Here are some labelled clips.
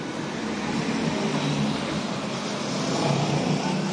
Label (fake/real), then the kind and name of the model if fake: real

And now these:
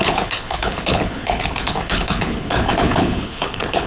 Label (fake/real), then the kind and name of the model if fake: fake, codec, HILCodec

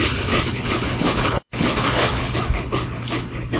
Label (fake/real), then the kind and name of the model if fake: fake, codec, HILCodec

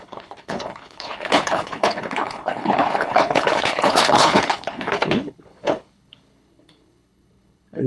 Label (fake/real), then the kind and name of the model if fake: fake, codec, HILCodec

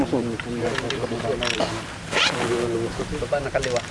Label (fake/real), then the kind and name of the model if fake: real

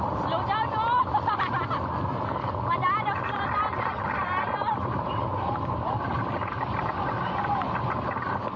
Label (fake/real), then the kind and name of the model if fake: real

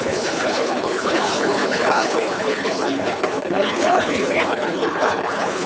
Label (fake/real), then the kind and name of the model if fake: fake, codec, HILCodec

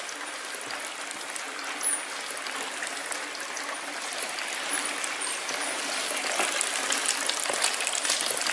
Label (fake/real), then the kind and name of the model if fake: real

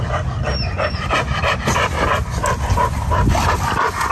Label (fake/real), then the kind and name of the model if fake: real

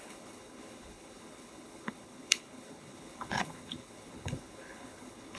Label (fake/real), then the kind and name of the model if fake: fake, codec, HILCodec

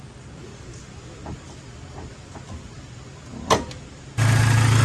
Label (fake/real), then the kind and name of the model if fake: real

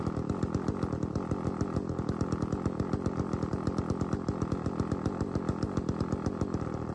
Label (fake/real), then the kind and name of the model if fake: real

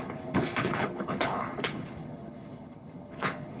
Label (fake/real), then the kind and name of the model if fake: fake, codec, HILCodec